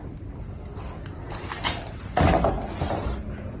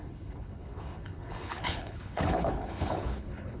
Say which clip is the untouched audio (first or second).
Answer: first